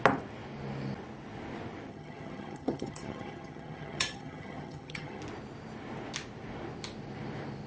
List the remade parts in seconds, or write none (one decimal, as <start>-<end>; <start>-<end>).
1.9-5.2